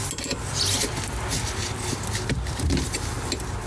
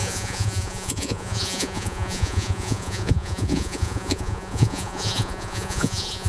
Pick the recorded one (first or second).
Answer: first